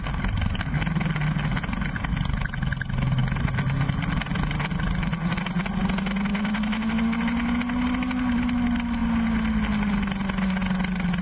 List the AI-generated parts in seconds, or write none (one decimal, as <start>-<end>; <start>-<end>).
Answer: none